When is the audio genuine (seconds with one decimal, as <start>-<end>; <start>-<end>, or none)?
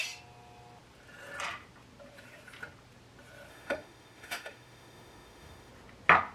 0.0-3.5; 5.7-6.3